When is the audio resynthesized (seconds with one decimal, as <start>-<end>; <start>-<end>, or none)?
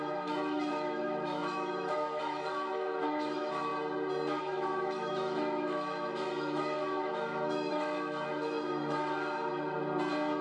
0.0-3.7; 4.4-9.5